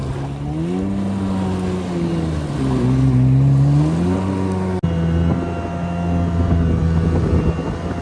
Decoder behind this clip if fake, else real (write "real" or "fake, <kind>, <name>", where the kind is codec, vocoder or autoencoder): real